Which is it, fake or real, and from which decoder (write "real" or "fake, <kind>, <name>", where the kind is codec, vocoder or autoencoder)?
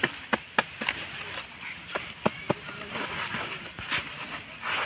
real